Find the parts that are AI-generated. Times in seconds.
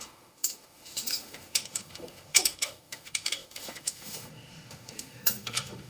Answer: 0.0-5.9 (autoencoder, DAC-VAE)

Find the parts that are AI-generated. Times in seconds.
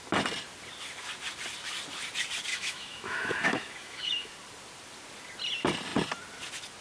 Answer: 2.5-4.3 (autoencoder, DAC-VAE)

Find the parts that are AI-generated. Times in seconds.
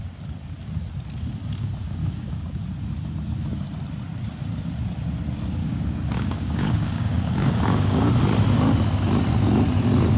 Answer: 2.0-2.6 (codec, DAC); 5.6-8.1